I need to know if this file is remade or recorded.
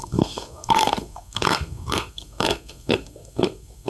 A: remade